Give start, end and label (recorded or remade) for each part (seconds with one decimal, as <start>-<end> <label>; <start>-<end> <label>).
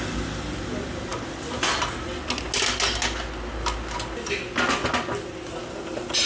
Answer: 0.0-6.3 recorded